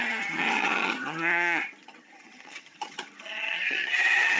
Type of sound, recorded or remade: remade